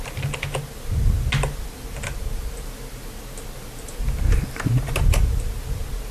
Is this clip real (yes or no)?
yes